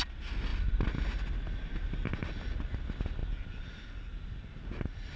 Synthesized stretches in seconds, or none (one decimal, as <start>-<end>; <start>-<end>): none